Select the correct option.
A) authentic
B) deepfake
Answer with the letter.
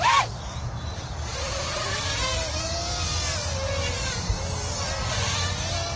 A